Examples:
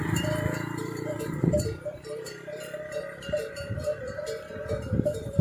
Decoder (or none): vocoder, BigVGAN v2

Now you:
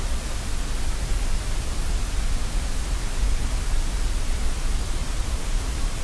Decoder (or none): none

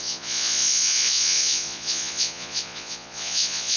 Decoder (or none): vocoder, Vocos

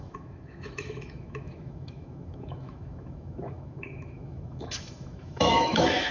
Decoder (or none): autoencoder, DAC-VAE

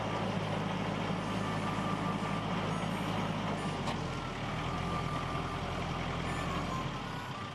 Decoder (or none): none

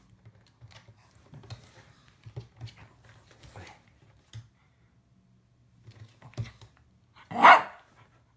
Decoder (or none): none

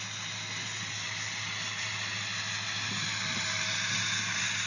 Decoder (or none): none